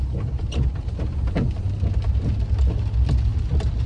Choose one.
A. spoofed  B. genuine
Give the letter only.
B